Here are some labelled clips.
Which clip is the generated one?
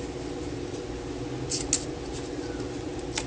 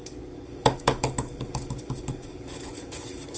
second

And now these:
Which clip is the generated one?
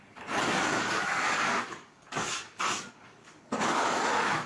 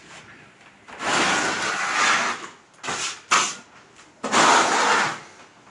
first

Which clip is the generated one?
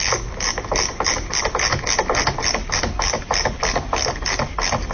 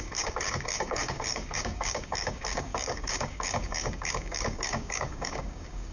second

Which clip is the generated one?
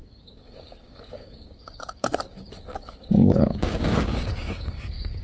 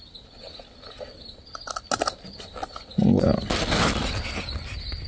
first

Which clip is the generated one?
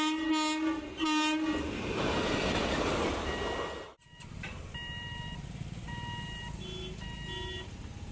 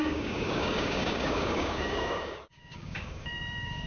second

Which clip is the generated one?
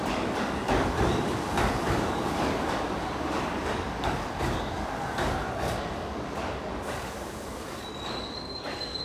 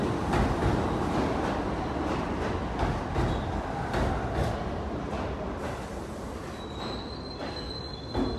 first